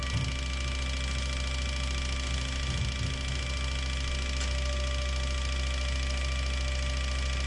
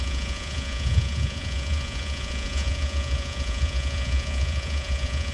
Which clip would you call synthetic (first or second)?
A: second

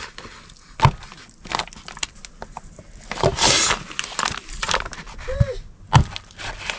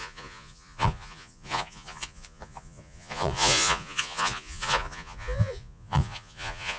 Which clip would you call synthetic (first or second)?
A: second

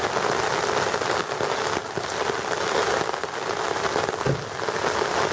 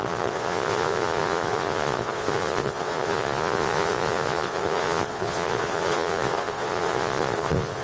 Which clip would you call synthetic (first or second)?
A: second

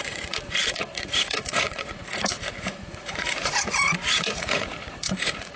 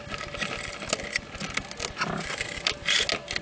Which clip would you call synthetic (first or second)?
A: first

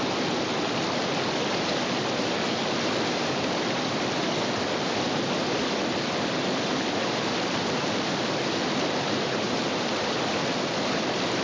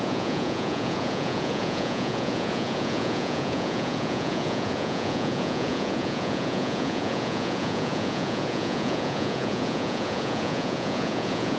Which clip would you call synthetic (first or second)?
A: second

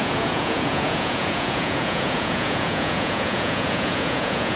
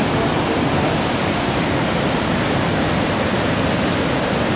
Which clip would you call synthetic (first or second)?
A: first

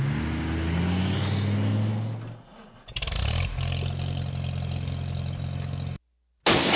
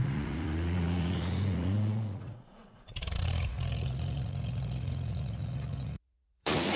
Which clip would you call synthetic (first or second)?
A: second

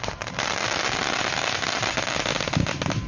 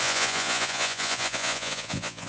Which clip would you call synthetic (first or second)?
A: second